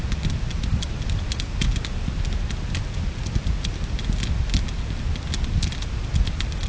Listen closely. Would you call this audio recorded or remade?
recorded